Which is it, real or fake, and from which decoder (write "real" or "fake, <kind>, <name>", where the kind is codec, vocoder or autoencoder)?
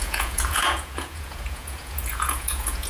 fake, vocoder, Vocos